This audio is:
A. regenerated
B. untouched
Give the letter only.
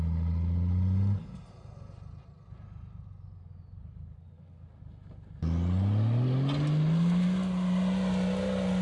B